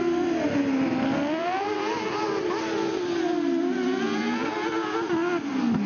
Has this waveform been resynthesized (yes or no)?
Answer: no